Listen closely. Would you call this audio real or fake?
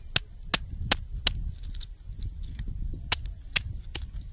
real